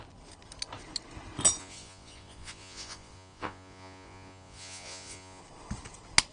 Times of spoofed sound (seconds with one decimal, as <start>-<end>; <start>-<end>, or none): 1.6-5.4